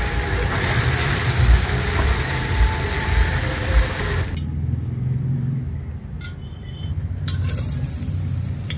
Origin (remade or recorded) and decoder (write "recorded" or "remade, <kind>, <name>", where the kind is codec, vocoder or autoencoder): remade, vocoder, BigVGAN v2